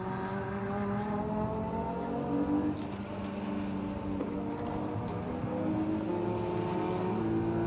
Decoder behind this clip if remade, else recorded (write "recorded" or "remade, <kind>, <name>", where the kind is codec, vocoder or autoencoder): recorded